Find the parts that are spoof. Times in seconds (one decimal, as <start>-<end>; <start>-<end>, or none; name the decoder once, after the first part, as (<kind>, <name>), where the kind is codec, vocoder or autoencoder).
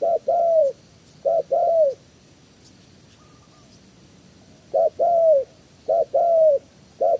none